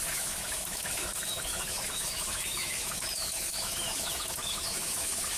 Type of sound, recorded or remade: remade